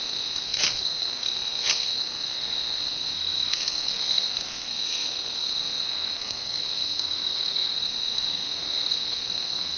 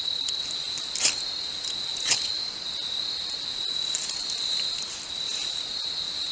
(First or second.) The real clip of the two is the second